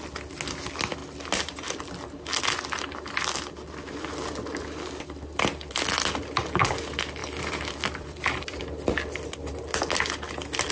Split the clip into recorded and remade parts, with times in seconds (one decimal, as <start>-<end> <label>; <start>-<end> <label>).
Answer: 0.0-7.2 recorded; 7.2-8.6 remade; 8.6-10.7 recorded